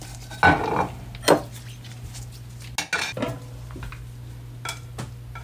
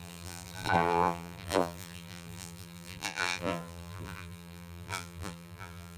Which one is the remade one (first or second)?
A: second